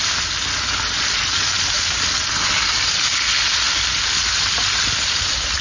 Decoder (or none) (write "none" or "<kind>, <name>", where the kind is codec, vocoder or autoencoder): none